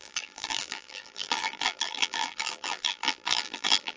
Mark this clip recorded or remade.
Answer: remade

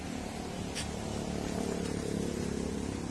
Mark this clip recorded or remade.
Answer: recorded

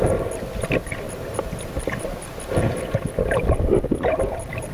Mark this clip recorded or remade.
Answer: recorded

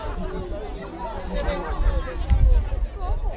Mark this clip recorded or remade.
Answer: recorded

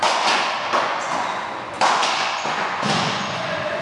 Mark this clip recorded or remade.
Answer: remade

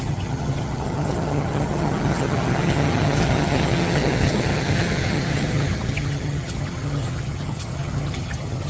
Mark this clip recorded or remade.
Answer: remade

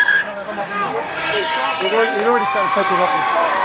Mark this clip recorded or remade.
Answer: remade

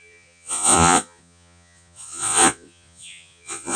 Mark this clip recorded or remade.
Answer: remade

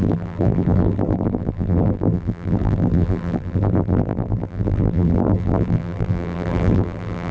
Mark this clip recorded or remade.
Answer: remade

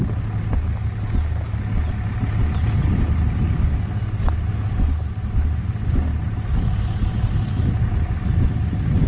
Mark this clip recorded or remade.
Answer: recorded